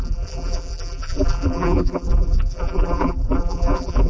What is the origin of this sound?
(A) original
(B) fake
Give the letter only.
B